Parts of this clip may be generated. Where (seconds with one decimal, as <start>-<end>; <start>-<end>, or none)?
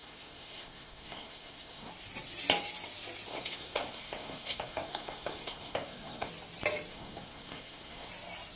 0.0-1.9; 3.3-6.3; 6.9-8.1